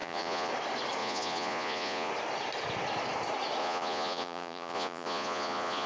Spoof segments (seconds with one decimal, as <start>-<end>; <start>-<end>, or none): 0.0-0.5; 1.0-2.1; 3.6-5.9